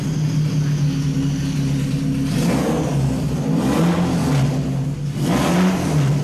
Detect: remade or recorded recorded